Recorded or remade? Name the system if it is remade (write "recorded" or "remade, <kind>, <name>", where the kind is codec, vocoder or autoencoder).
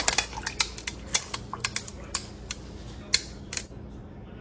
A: recorded